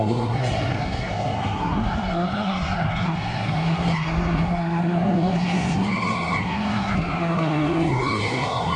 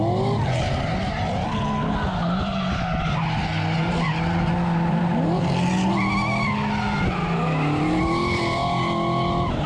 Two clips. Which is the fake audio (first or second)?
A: first